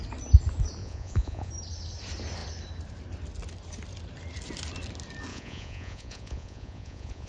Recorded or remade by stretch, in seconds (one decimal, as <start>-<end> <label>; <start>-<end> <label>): 0.0-0.8 recorded; 0.8-1.5 remade; 1.5-5.3 recorded; 5.3-7.3 remade